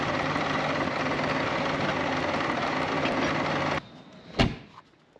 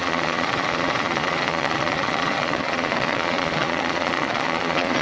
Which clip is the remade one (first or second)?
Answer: second